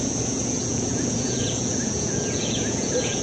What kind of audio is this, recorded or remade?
remade